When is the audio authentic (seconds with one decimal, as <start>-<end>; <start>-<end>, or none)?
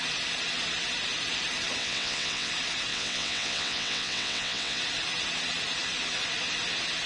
0.0-1.8; 2.5-2.9; 4.8-7.1